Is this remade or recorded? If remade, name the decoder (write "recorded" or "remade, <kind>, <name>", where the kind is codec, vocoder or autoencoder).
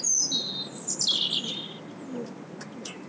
recorded